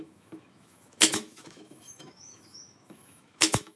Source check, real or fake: fake